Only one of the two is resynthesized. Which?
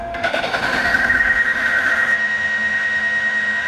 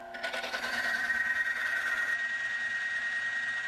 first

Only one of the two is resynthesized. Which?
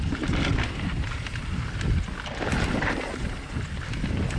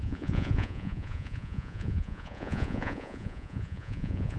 second